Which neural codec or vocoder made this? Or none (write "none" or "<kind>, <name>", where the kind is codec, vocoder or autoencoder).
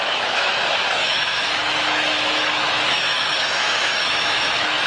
autoencoder, DAC-VAE